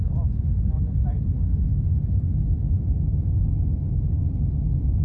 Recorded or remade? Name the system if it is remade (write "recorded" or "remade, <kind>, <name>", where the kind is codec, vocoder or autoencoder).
recorded